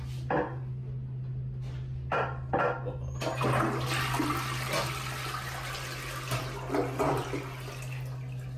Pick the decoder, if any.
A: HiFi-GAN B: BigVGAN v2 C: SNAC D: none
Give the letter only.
D